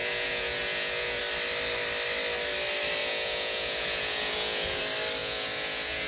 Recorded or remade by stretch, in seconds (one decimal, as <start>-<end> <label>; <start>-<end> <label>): 0.0-1.2 remade; 1.2-3.0 recorded; 3.0-4.8 remade; 4.8-5.2 recorded; 5.2-6.1 remade